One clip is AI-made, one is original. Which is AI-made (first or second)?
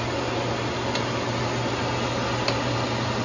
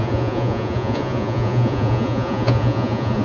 second